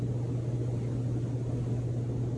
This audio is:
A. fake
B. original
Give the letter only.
B